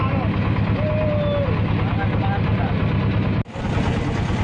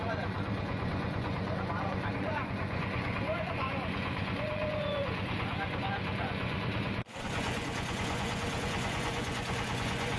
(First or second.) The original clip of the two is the first